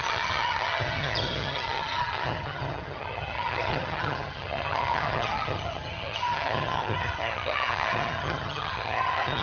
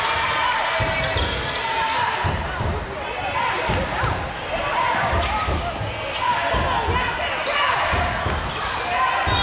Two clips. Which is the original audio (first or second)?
second